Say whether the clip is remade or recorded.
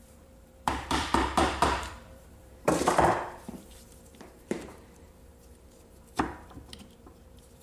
remade